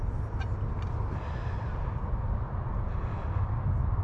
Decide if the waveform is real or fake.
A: real